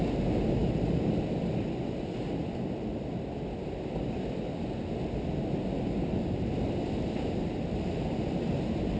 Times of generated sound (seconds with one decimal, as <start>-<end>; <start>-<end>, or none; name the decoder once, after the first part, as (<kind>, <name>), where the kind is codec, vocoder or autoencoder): none